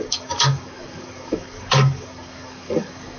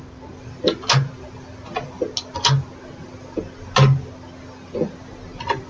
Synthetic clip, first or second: first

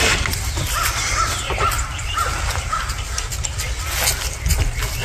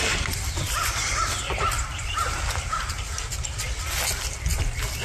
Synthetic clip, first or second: second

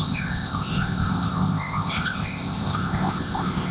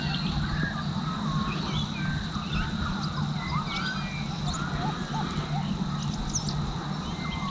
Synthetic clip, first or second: first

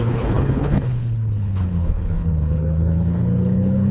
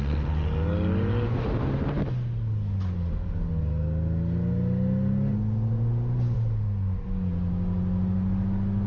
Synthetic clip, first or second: first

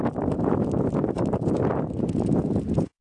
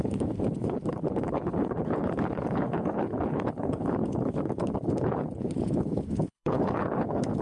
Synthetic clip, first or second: second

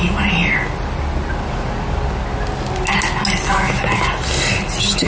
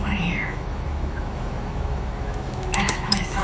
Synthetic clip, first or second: second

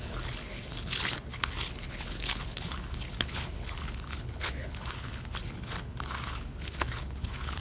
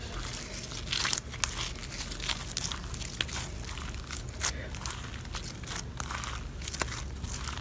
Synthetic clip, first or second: first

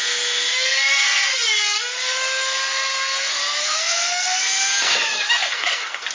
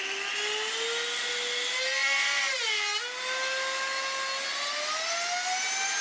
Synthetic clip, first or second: first